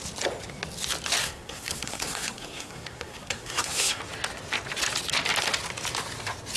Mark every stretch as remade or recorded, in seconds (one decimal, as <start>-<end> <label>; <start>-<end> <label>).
0.0-1.2 recorded; 1.2-4.0 remade; 4.0-6.6 recorded